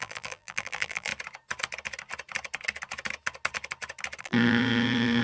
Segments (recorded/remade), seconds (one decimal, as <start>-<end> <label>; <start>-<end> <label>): 0.0-1.1 remade; 1.1-4.2 recorded; 4.2-5.2 remade